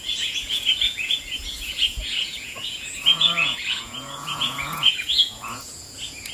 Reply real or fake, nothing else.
fake